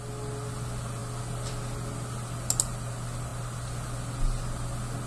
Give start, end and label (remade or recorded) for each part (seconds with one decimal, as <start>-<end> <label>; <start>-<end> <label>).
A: 0.0-5.1 recorded